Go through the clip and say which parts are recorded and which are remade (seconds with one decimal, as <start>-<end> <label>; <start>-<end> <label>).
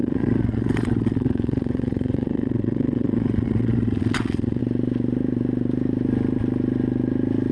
0.0-4.6 remade; 4.6-7.5 recorded